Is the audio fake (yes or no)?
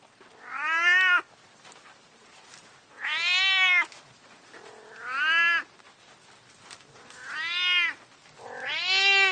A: no